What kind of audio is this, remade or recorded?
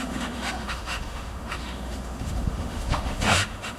remade